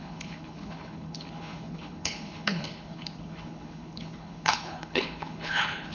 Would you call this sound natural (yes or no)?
no